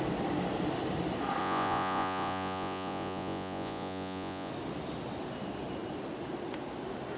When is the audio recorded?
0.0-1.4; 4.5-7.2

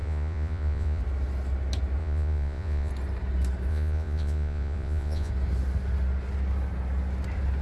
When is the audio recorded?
1.0-2.0; 2.9-3.7; 5.3-7.6

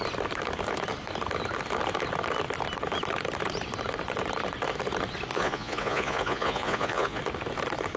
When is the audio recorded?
0.0-5.3; 7.2-8.0

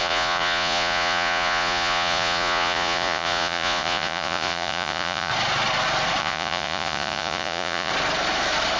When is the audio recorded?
5.3-6.2; 7.9-8.8

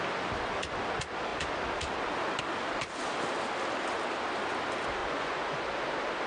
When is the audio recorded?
0.0-5.0; 5.6-6.3

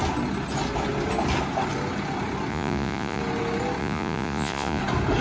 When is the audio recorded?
0.0-2.5; 3.2-3.8; 4.8-5.2

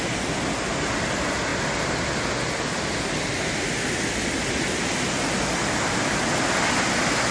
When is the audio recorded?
0.0-7.3

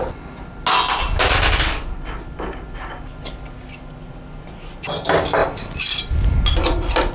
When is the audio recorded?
0.0-7.1